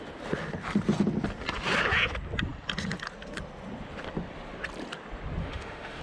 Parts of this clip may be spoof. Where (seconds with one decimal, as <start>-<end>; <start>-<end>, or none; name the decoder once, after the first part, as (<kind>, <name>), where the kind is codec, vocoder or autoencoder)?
5.4-6.0 (autoencoder, DAC-VAE)